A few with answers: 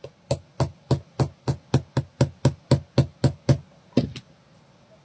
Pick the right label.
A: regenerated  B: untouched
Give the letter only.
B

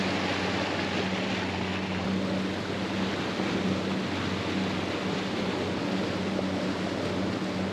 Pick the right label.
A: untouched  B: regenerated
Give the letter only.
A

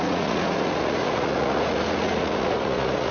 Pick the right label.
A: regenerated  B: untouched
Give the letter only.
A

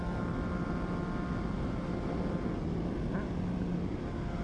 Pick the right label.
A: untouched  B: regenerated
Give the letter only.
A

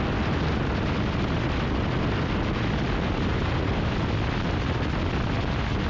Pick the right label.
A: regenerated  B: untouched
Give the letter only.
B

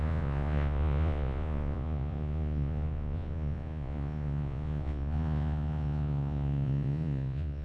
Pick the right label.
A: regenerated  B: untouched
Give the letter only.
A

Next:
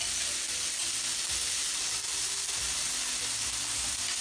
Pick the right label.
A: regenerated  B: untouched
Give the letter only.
B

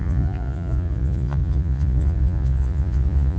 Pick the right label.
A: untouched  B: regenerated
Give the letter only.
B